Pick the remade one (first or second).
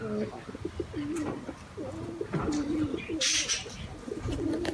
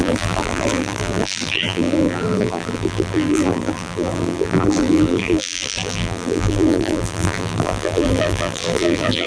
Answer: second